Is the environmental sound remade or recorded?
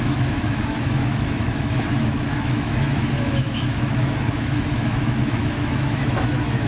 remade